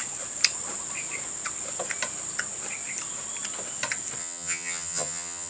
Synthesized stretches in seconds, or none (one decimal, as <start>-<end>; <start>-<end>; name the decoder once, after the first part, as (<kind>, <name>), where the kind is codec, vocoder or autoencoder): 4.2-5.5 (vocoder, HiFi-GAN)